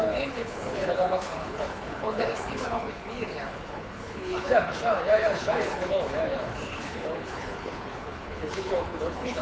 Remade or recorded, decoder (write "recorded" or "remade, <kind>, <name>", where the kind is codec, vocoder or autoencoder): remade, codec, HILCodec